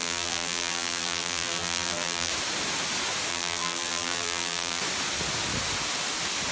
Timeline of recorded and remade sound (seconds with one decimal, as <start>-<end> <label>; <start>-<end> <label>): 0.0-2.3 remade; 2.3-3.3 recorded; 3.3-4.8 remade; 4.8-6.5 recorded